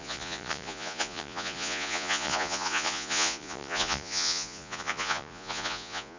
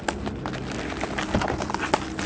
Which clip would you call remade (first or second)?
first